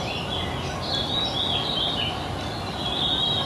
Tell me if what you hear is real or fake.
real